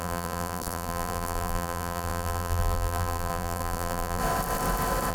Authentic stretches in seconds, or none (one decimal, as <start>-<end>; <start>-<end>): 4.2-5.1